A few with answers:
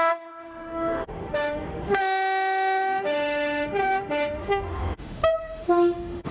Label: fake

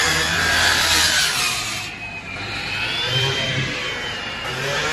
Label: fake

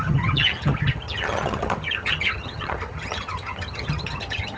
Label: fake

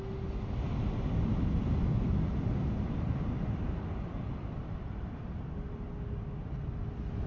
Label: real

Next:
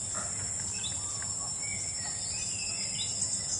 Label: real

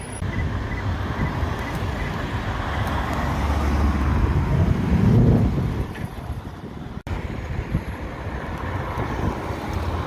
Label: real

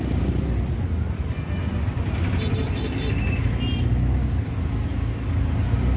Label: real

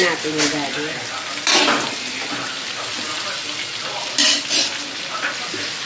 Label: real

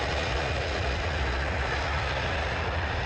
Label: fake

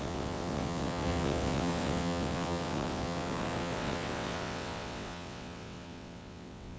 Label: fake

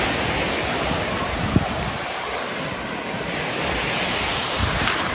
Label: fake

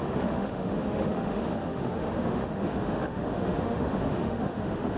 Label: fake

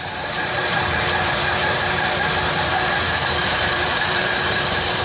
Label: fake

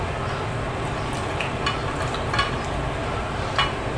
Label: real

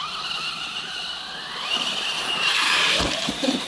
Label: fake